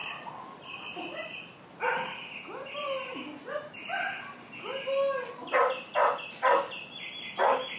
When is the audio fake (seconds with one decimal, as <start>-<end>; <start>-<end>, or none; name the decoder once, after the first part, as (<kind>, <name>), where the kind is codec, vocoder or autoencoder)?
none